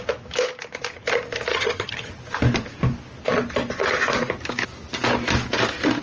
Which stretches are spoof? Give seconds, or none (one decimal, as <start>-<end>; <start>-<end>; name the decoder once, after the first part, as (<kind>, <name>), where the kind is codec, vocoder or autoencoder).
1.5-2.1 (vocoder, HiFi-GAN)